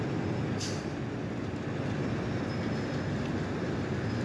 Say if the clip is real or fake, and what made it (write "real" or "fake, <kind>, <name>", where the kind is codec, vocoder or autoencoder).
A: real